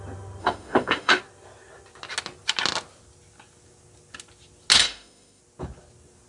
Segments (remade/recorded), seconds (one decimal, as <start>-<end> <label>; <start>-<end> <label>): 0.0-0.4 recorded; 0.4-1.2 remade; 1.2-4.8 recorded; 4.8-5.4 remade; 5.4-6.3 recorded